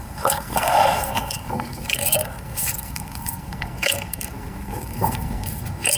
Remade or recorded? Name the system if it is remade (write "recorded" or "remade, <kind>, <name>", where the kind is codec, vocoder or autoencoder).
remade, codec, SNAC